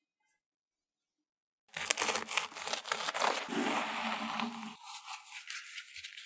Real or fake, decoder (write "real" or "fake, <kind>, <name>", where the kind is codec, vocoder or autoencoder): real